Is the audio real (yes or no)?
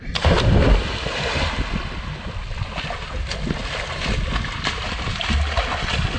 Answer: yes